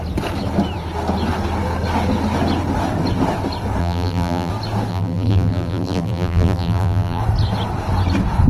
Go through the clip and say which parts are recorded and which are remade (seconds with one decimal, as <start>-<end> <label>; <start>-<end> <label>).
0.0-3.8 recorded; 3.8-4.5 remade; 4.5-4.9 recorded; 4.9-7.2 remade; 7.2-8.5 recorded